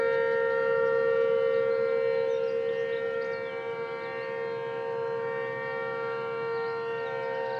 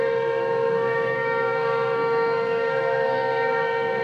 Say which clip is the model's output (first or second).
second